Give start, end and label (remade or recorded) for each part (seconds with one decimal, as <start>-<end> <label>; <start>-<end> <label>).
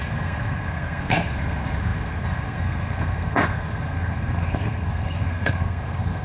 0.0-6.2 remade